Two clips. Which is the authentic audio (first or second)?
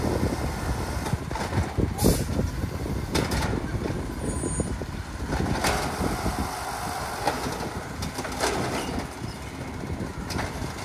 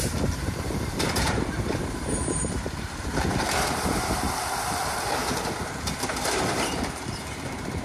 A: first